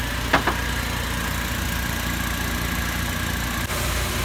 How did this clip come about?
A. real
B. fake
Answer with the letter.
A